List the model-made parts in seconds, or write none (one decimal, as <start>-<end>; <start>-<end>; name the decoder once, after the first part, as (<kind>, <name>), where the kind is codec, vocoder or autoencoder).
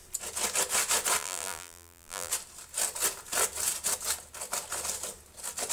1.2-2.3 (vocoder, BigVGAN v2)